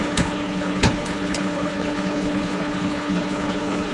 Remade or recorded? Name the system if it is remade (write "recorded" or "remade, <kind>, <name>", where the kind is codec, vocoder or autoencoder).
remade, codec, HILCodec